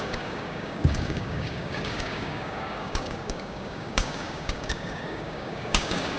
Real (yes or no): no